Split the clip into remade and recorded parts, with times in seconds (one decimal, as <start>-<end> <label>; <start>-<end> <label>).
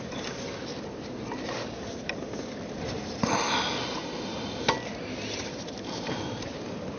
0.0-7.0 recorded